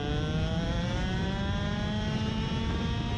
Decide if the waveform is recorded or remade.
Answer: recorded